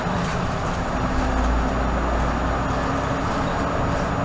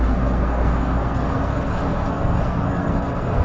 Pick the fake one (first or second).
second